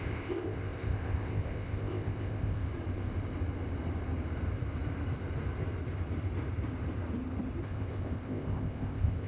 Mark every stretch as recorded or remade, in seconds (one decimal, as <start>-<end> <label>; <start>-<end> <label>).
0.0-2.7 remade; 2.7-7.6 recorded; 7.6-9.3 remade